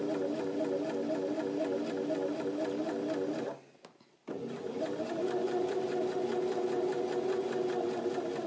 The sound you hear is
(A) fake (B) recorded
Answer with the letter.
B